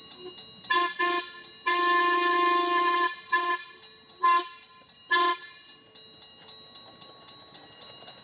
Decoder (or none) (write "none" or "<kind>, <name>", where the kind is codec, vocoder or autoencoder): none